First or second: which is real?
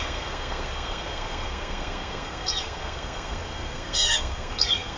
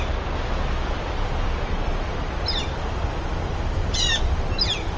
second